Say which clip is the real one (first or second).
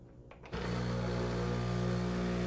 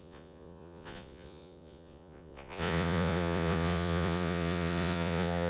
first